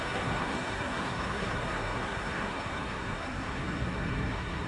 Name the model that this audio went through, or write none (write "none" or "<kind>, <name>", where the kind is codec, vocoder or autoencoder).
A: codec, SNAC